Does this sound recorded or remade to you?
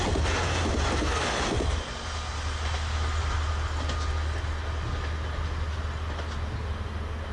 recorded